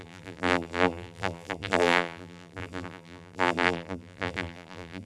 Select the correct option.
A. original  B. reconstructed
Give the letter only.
B